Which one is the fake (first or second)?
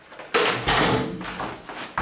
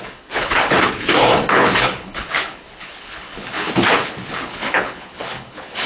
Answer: second